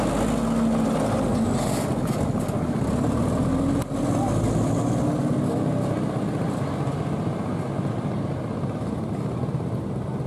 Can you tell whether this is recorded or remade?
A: recorded